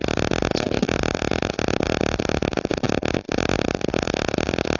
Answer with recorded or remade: recorded